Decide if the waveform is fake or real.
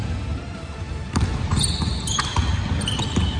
real